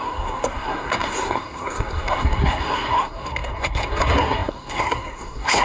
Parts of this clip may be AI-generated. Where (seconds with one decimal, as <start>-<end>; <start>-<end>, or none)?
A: 0.0-5.6